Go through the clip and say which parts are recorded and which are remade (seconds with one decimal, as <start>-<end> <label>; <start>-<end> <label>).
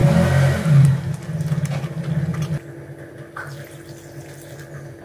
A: 0.0-5.0 recorded